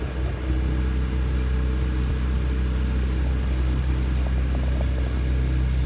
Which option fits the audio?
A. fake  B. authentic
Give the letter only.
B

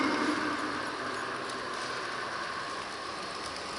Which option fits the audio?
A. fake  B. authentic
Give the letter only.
B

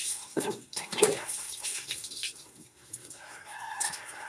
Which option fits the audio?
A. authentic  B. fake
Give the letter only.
B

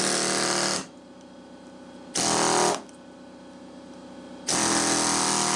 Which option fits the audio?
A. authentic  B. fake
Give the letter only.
A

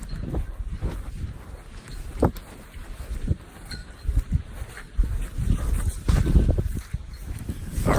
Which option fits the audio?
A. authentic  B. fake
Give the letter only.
A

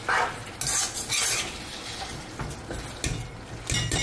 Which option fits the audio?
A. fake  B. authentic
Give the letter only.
B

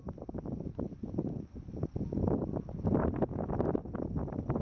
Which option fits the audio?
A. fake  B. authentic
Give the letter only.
A